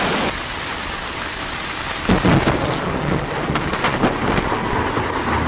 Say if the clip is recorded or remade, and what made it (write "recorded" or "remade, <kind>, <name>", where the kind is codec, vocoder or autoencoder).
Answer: recorded